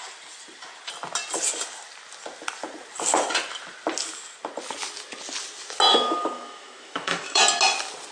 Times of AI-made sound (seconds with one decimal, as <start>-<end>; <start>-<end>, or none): 5.9-7.4